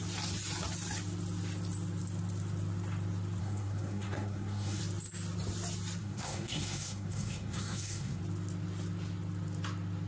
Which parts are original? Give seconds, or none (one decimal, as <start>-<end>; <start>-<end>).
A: 0.0-3.4; 4.8-6.0; 8.2-10.1